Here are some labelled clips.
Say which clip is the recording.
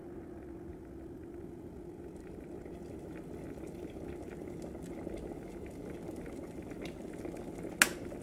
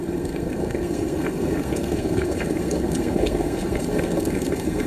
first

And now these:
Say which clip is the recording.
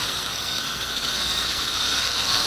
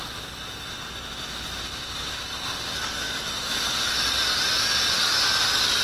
second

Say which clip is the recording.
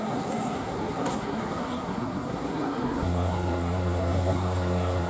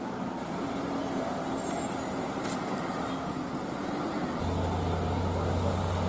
second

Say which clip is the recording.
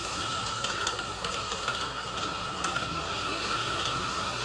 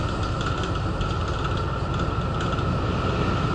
second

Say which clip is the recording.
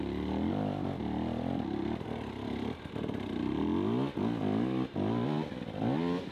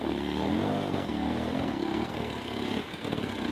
first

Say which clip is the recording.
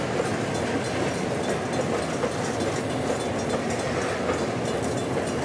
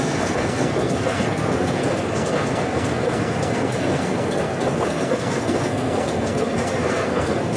first